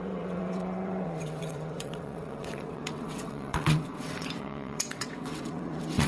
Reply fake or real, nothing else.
fake